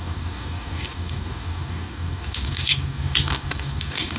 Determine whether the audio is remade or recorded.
remade